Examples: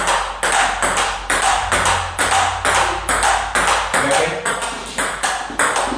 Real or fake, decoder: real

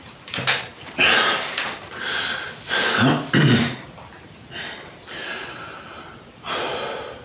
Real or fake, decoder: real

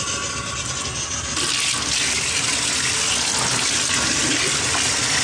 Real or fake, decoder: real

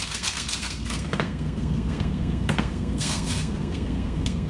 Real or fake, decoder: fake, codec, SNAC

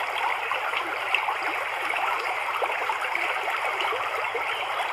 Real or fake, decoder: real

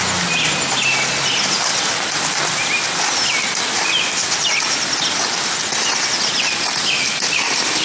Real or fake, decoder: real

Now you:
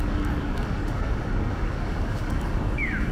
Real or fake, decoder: fake, codec, DAC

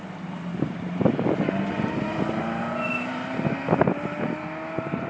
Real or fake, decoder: fake, vocoder, BigVGAN v2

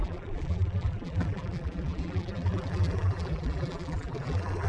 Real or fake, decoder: fake, vocoder, BigVGAN v2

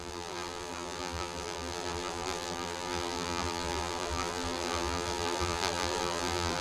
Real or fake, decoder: fake, vocoder, BigVGAN v2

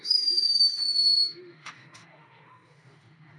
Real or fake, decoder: fake, autoencoder, DAC-VAE